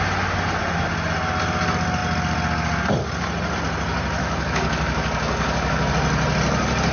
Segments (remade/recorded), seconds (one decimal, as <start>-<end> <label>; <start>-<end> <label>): 0.0-4.2 recorded; 4.2-5.9 remade; 5.9-6.9 recorded